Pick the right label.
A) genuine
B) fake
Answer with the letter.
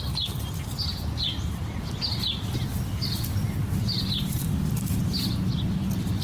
A